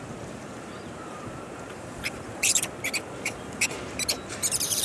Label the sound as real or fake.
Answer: fake